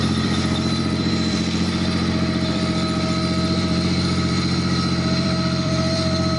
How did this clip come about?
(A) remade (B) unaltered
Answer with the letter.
A